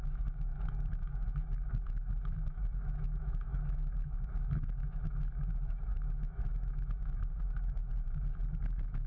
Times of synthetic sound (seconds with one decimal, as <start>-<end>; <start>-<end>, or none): 0.0-7.9; 8.7-9.1